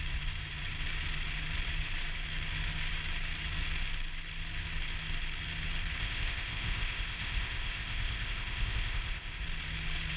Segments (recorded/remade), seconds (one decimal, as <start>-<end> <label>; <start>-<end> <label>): 0.0-6.0 recorded; 6.0-9.4 remade; 9.4-10.2 recorded